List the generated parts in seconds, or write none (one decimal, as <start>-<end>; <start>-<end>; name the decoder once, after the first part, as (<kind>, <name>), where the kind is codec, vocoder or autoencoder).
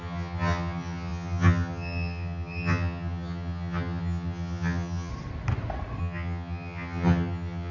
0.0-5.1 (vocoder, HiFi-GAN); 6.0-7.7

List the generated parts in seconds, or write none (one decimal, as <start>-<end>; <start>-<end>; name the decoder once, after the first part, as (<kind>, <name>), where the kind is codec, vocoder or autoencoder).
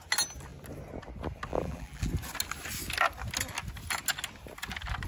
1.5-2.1 (vocoder, BigVGAN v2)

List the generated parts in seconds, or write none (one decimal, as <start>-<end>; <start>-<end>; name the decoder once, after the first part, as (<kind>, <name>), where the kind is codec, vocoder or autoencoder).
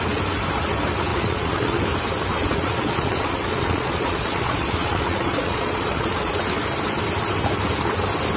1.1-1.8 (vocoder, Vocos); 2.3-6.3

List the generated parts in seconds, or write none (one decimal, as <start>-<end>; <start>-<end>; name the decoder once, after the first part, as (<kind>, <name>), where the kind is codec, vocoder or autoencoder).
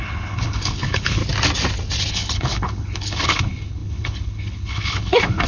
0.0-1.2 (codec, HILCodec); 2.1-5.5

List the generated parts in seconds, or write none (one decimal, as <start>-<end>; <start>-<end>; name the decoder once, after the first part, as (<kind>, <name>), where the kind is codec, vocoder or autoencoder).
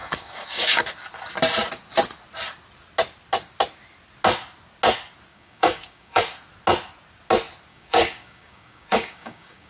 0.0-0.8 (codec, DAC); 5.3-6.2; 7.7-9.7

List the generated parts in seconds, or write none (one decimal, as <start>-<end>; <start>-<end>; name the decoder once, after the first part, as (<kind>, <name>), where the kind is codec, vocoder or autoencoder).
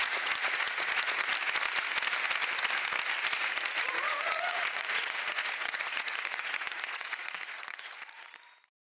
0.0-1.3 (vocoder, Vocos); 3.4-8.9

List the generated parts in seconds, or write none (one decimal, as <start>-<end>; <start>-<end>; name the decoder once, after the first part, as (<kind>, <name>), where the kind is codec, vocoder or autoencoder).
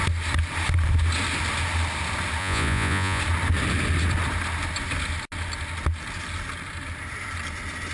2.4-3.2 (vocoder, Vocos)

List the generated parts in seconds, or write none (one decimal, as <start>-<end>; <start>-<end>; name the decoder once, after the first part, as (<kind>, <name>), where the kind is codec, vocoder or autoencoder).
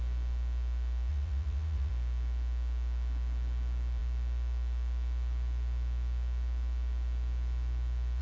1.1-1.9 (vocoder, Vocos)